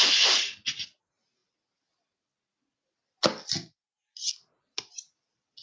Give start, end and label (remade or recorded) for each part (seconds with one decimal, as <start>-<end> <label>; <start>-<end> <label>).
0.0-5.6 recorded